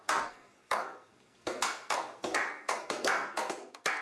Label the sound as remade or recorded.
remade